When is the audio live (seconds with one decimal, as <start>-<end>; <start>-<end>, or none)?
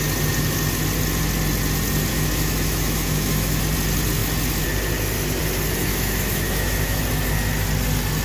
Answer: 0.0-2.1; 3.6-5.9; 7.0-8.2